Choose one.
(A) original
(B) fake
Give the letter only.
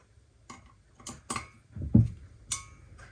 A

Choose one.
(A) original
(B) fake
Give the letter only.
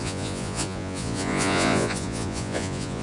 B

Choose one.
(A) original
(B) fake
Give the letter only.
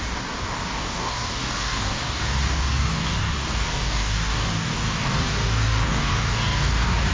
B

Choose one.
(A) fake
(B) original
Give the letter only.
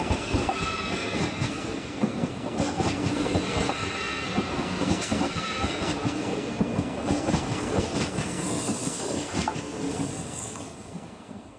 A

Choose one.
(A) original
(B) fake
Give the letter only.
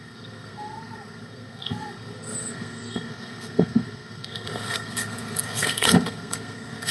B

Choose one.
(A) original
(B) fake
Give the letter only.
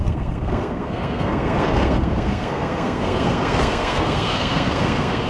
B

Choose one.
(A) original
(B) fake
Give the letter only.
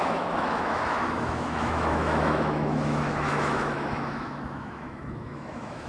B